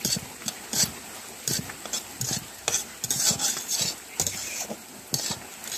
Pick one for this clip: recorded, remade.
recorded